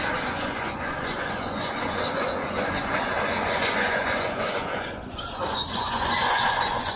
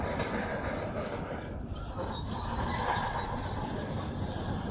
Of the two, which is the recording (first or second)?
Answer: second